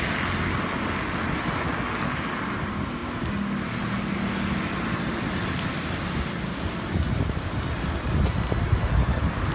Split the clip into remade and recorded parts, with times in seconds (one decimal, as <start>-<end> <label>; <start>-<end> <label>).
0.0-9.5 recorded